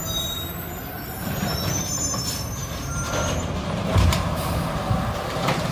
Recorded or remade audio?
remade